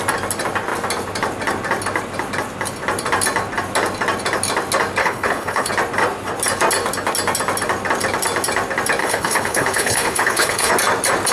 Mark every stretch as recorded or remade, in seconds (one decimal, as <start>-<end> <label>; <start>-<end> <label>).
0.0-5.0 recorded; 5.0-5.7 remade; 5.7-9.0 recorded; 9.0-10.7 remade; 10.7-11.3 recorded